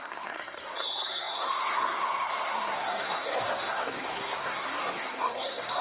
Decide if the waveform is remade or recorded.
remade